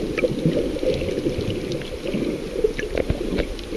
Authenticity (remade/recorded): recorded